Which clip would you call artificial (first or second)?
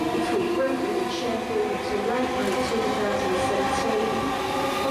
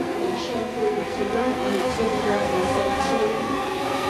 second